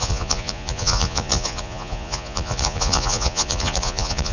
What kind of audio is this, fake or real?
fake